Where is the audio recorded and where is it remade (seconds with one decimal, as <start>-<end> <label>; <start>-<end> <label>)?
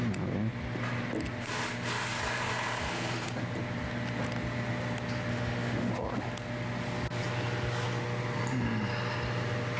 0.0-5.3 recorded; 5.3-5.9 remade; 5.9-9.8 recorded